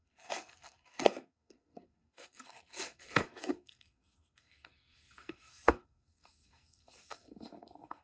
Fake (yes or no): yes